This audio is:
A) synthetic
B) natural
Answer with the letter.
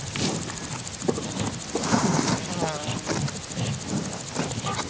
B